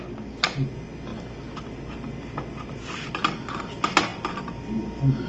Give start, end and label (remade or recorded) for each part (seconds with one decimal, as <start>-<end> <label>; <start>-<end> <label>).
0.0-5.3 recorded